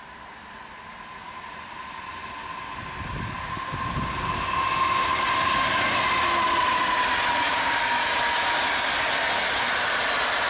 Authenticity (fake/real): real